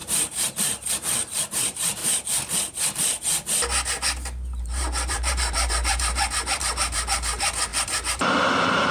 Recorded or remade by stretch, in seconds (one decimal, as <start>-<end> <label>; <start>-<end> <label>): 0.0-2.0 remade; 2.0-4.6 recorded; 4.6-8.9 remade